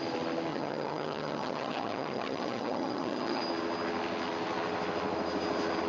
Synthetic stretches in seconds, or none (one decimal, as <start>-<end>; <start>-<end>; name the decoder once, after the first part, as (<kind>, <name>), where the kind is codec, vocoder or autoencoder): 0.5-3.4 (vocoder, HiFi-GAN)